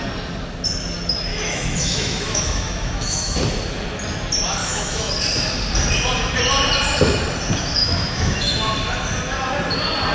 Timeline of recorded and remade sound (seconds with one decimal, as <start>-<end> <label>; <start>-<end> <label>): 0.0-1.3 recorded; 1.3-3.4 remade; 3.4-4.6 recorded; 4.6-5.1 remade; 5.1-7.8 recorded; 7.8-8.7 remade; 8.7-10.1 recorded